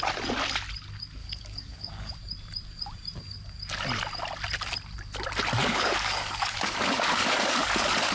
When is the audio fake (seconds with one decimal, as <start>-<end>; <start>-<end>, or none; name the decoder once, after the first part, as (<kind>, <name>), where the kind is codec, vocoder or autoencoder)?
1.2-2.1 (codec, DAC); 5.6-8.1